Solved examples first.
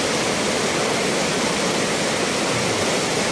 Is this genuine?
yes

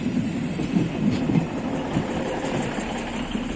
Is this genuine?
yes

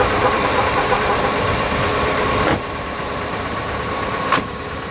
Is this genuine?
no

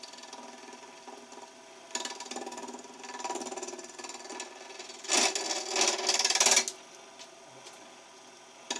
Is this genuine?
yes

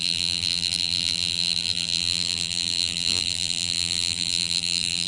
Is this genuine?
no